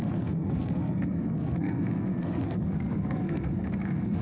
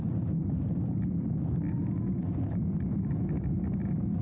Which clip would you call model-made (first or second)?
first